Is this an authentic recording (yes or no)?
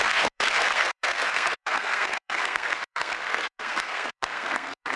no